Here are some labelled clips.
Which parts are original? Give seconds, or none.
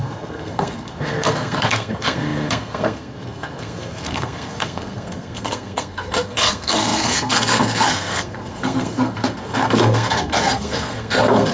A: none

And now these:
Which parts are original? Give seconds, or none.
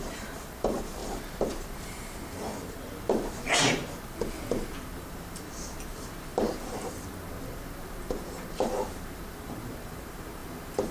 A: 3.8-4.9; 10.4-10.9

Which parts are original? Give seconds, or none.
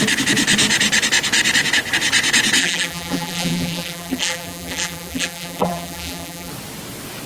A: 0.0-2.6; 6.5-7.3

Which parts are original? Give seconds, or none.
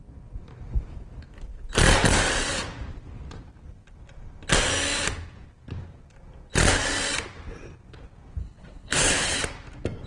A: 0.0-8.4; 9.4-10.1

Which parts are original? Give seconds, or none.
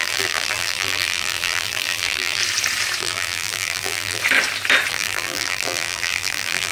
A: 2.4-3.0; 4.2-4.9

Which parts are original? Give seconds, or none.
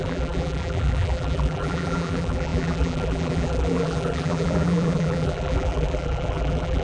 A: none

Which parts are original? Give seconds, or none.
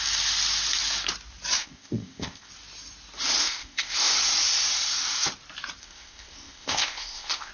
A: 0.0-1.6; 2.5-3.4; 4.1-5.8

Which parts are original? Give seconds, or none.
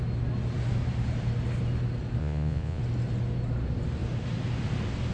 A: 0.0-2.2; 2.8-5.1